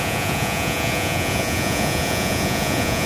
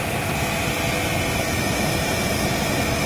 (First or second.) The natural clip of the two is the second